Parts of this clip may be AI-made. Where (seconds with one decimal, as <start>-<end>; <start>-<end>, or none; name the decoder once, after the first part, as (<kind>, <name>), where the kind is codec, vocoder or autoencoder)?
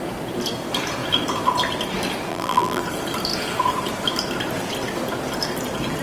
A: 2.3-2.8 (vocoder, BigVGAN v2)